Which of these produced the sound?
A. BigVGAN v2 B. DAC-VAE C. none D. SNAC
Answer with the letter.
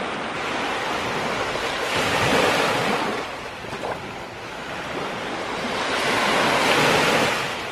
C